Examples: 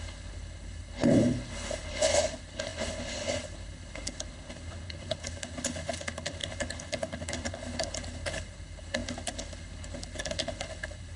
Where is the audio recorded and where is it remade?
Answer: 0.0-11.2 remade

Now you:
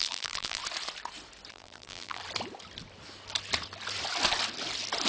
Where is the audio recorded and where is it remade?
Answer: 0.0-0.6 remade; 0.6-1.5 recorded; 1.5-2.2 remade; 2.2-5.1 recorded